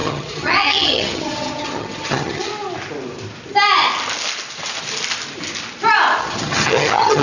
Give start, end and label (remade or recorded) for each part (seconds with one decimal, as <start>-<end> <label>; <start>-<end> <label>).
0.0-2.5 remade; 2.5-6.2 recorded; 6.2-7.2 remade